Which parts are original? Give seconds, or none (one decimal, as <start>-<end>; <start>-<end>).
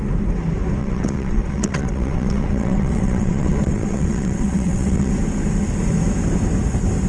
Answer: 0.0-0.8; 5.1-7.1